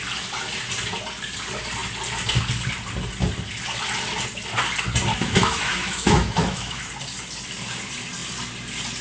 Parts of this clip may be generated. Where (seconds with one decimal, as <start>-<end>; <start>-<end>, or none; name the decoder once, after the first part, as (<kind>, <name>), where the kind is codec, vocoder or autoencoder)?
5.1-6.9 (autoencoder, DAC-VAE)